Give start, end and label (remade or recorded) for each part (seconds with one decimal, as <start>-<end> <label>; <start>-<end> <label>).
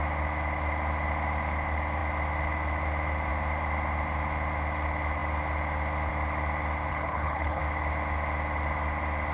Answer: 0.0-6.9 recorded; 6.9-7.6 remade; 7.6-9.3 recorded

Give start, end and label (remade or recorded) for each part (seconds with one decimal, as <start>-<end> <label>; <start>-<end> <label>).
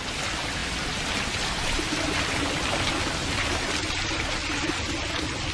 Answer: 0.0-5.5 recorded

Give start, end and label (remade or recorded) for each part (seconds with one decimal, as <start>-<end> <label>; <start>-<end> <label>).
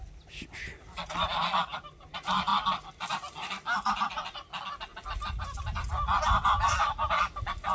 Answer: 0.0-7.7 recorded